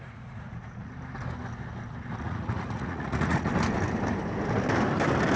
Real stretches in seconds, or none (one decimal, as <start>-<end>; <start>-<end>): 0.9-2.2; 3.5-5.4